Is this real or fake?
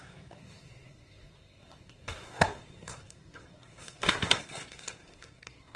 fake